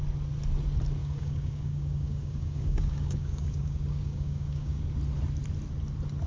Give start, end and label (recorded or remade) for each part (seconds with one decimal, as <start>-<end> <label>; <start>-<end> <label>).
0.0-1.0 recorded; 1.0-4.8 remade; 4.8-6.3 recorded